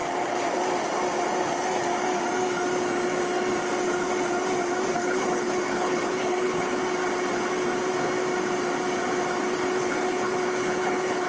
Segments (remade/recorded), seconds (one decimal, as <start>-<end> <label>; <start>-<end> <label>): 0.0-4.9 recorded; 4.9-6.8 remade; 6.8-9.5 recorded; 9.5-11.3 remade

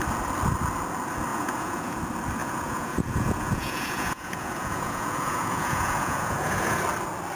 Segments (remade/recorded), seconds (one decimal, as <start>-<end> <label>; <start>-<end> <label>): 0.0-1.3 recorded; 1.3-2.0 remade; 2.0-2.4 recorded; 2.4-6.8 remade; 6.8-7.3 recorded

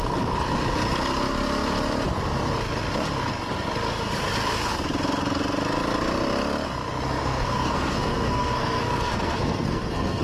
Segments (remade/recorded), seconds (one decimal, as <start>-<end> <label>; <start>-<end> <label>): 0.0-7.2 recorded; 7.2-10.2 remade

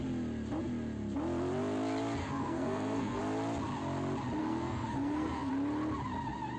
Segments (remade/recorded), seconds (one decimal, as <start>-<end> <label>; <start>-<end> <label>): 0.0-2.2 recorded; 2.2-3.2 remade; 3.2-4.4 recorded; 4.4-5.5 remade; 5.5-6.6 recorded

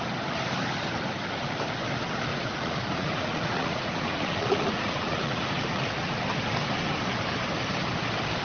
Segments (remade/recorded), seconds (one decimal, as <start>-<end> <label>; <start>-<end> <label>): 0.0-2.3 recorded; 2.3-6.2 remade; 6.2-8.4 recorded

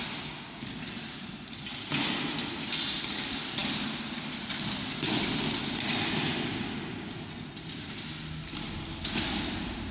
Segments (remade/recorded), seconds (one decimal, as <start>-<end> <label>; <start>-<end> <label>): 0.0-9.9 recorded